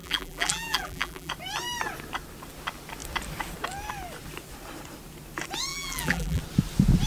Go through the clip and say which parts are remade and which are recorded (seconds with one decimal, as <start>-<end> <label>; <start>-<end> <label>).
0.0-1.3 remade; 1.3-5.7 recorded; 5.7-6.4 remade; 6.4-7.1 recorded